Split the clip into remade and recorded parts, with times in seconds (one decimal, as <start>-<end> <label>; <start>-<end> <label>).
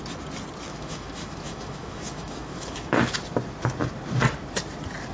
0.0-0.7 recorded; 0.7-3.0 remade; 3.0-5.1 recorded